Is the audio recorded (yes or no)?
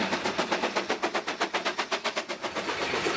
yes